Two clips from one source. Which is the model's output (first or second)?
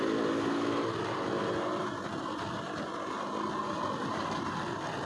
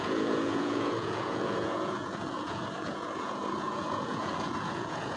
second